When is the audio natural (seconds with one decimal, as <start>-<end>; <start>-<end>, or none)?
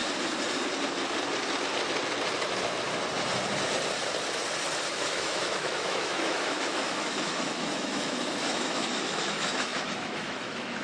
0.0-4.9